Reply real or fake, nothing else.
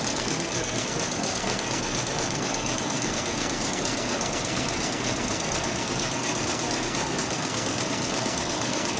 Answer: fake